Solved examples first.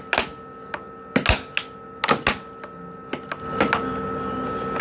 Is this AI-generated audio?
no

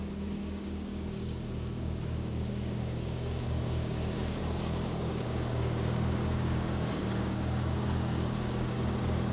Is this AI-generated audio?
yes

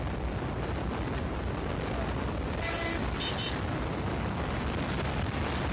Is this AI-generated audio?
no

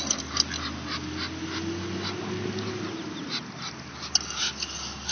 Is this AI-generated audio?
no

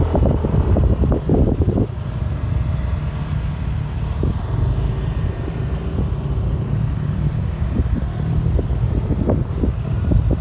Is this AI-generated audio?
no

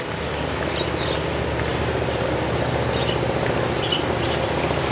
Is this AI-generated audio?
no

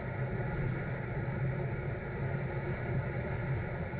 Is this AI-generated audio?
no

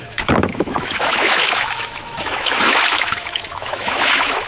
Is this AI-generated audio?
yes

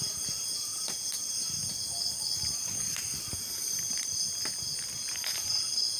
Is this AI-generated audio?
no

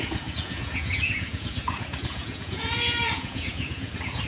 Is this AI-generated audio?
yes